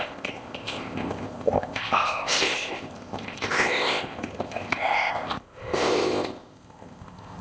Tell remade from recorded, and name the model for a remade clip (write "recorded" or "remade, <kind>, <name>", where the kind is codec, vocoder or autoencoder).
remade, codec, ZipCodec